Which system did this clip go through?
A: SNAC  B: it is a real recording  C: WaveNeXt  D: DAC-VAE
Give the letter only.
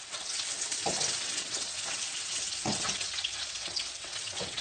C